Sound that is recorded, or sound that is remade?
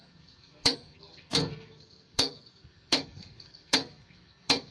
remade